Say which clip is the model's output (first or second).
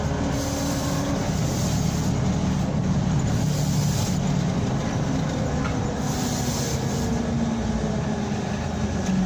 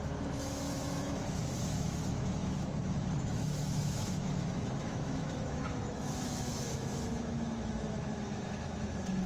second